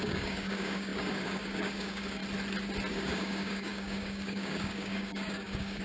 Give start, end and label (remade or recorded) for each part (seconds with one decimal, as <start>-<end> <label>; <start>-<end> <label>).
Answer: 0.0-2.2 remade; 2.2-2.9 recorded; 2.9-5.8 remade